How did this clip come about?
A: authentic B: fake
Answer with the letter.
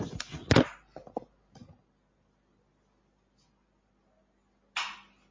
A